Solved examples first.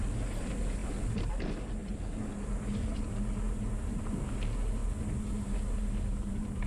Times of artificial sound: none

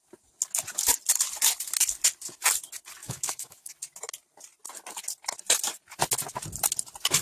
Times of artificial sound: 3.0-3.7

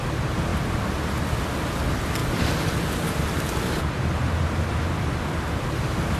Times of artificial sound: 2.2-5.3

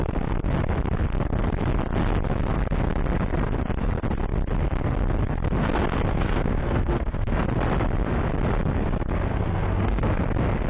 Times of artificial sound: 6.1-7.4; 9.3-10.1

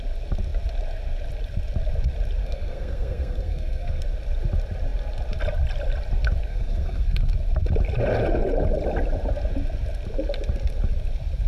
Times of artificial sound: 2.4-4.0; 6.5-7.3